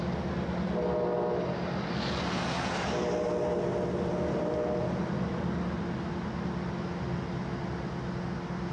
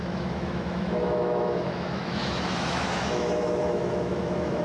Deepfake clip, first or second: second